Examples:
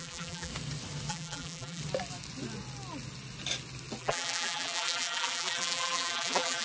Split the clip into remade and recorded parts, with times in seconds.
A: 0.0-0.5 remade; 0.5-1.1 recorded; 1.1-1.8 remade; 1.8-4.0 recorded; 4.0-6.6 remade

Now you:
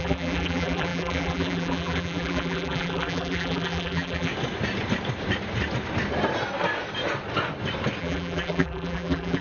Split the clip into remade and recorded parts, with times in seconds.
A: 0.0-4.3 remade; 4.3-8.0 recorded; 8.0-9.4 remade